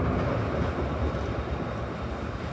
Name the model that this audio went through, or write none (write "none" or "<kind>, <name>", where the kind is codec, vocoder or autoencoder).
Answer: none